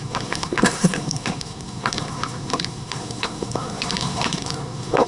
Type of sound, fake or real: fake